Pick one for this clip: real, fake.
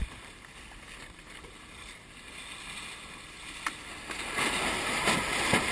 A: real